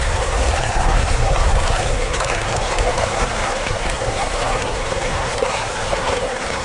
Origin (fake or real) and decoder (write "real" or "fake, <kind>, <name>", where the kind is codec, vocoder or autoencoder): fake, codec, SNAC